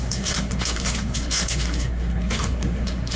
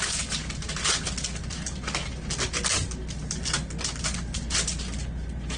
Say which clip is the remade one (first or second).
first